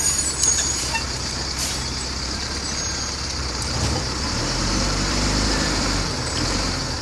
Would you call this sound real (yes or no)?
no